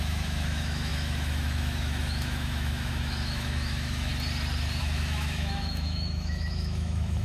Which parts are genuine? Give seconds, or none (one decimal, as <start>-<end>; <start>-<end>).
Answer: 4.1-4.8